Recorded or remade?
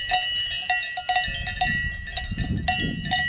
recorded